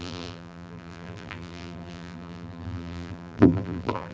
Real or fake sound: fake